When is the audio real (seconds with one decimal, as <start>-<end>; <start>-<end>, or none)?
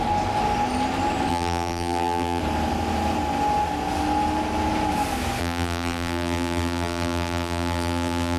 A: 0.0-1.3; 2.4-5.4